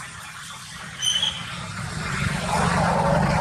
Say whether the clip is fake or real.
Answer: real